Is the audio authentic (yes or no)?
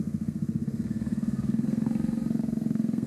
no